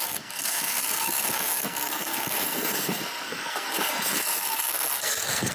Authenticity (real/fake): fake